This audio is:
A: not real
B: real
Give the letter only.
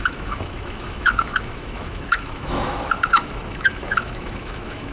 A